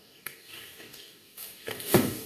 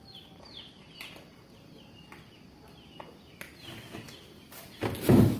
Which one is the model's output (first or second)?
first